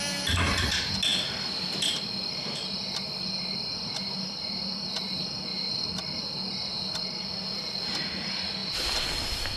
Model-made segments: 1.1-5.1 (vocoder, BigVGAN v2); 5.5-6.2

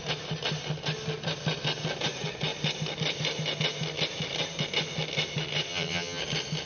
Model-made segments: 5.7-6.2 (vocoder, HiFi-GAN)

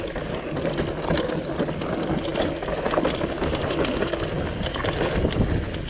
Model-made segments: none